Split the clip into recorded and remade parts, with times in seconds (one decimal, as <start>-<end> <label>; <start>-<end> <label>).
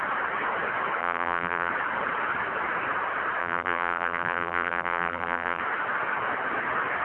0.0-1.0 recorded; 1.0-1.7 remade; 1.7-3.4 recorded; 3.4-5.6 remade; 5.6-7.0 recorded